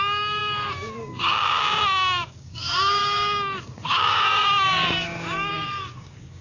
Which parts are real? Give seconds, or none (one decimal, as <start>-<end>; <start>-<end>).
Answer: none